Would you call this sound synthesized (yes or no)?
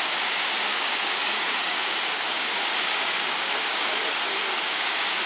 yes